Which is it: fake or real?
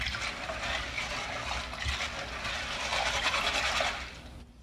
real